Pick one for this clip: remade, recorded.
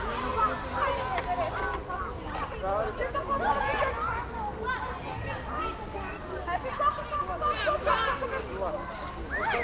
recorded